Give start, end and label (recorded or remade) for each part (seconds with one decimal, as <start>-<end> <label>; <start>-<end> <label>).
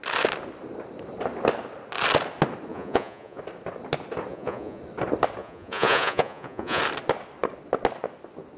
0.0-2.7 recorded; 2.7-3.4 remade; 3.4-4.3 recorded; 4.3-4.8 remade; 4.8-5.4 recorded; 5.4-6.8 remade; 6.8-8.6 recorded